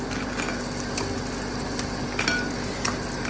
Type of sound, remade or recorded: recorded